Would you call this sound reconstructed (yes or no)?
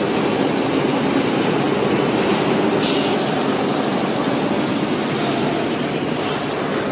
no